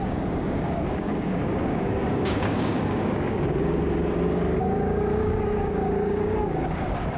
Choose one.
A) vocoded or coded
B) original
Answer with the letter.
A